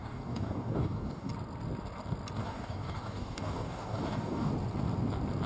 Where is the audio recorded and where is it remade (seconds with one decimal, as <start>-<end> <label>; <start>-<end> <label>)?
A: 0.0-1.3 remade; 1.3-2.4 recorded; 2.4-4.5 remade; 4.5-5.5 recorded